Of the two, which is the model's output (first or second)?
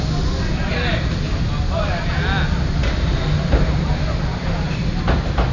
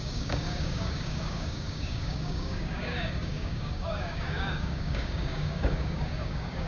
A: second